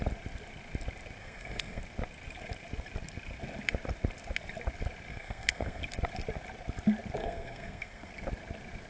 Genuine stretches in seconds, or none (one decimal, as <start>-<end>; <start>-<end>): 0.0-1.2; 1.8-5.1; 5.8-7.2; 8.1-8.9